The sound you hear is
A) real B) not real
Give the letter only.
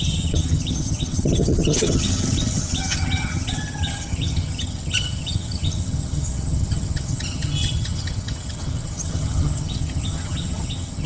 B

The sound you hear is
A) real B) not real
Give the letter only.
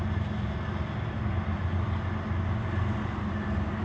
A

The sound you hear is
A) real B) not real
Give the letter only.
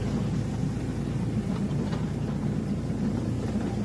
A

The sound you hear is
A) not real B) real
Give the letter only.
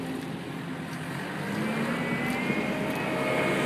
B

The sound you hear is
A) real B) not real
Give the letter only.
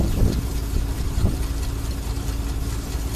A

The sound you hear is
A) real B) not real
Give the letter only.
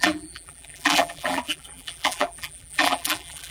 B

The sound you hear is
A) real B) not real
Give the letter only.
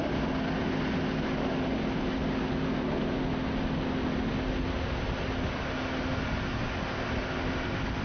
A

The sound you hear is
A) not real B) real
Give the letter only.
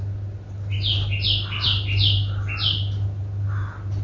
B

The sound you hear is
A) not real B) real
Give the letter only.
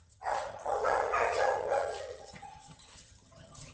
A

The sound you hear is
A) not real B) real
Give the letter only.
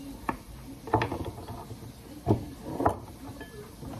B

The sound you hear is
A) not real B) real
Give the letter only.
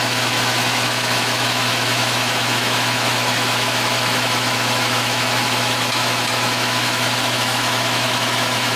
A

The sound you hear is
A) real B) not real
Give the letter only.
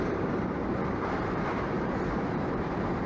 B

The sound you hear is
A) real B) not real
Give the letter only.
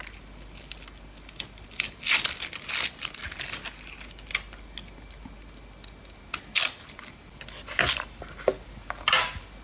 A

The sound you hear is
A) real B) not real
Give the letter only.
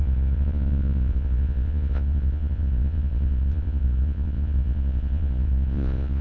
B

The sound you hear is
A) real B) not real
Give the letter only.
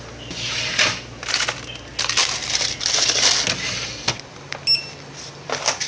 A